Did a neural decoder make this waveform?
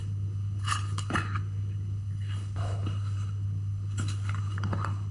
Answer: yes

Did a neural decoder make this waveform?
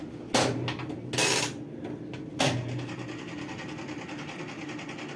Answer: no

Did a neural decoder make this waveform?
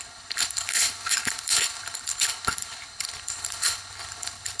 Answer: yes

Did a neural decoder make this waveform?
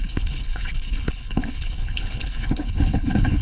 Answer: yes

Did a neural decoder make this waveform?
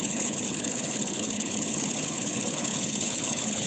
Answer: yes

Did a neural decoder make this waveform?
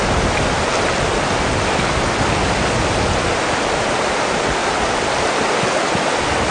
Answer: no